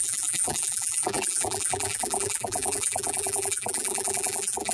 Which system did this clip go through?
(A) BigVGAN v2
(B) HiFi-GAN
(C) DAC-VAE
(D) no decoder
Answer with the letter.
A